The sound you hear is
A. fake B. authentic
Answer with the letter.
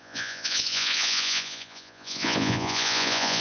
A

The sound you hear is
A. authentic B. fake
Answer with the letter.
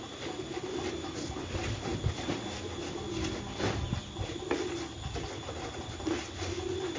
A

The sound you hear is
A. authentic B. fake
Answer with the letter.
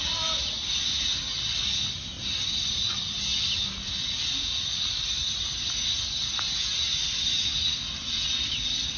A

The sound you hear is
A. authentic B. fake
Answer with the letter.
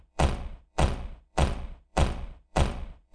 B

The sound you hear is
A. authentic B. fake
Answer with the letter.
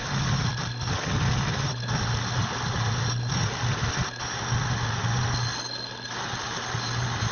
A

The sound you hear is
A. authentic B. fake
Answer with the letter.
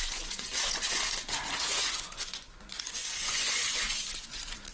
B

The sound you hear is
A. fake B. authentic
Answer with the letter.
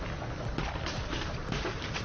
B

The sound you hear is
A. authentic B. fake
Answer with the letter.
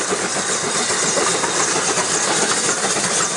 A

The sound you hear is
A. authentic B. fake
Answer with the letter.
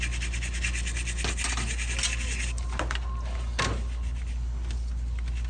A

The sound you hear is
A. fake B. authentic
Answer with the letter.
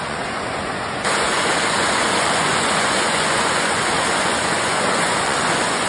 A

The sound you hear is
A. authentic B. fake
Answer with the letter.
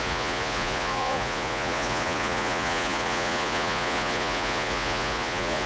B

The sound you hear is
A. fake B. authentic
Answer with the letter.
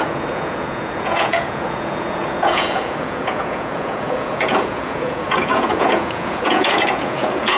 A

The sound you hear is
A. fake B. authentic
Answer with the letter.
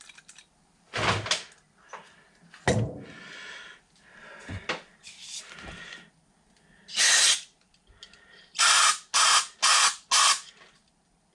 B